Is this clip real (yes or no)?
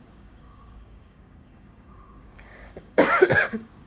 no